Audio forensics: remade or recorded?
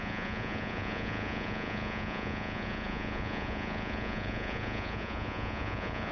remade